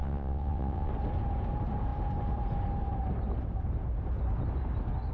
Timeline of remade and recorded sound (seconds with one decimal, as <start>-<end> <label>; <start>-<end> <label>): 0.0-0.9 remade; 0.9-5.1 recorded